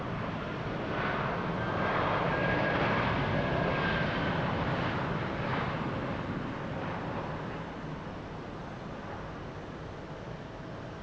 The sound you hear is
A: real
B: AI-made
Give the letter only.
A